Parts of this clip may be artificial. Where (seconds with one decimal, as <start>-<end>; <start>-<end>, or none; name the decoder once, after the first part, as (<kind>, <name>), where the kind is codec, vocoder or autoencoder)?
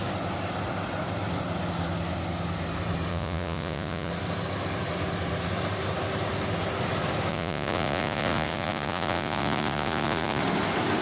3.1-4.1 (vocoder, Vocos); 7.3-10.4